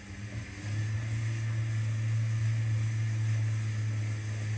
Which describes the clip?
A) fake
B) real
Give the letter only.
B